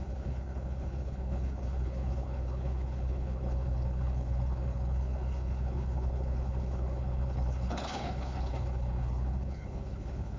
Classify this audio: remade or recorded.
remade